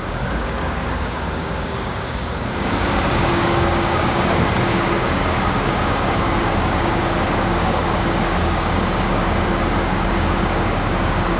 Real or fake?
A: fake